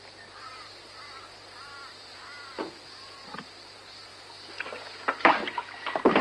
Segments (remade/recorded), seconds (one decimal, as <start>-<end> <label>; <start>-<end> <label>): 0.0-1.7 remade; 1.7-3.0 recorded; 3.0-4.1 remade; 4.1-5.1 recorded; 5.1-6.2 remade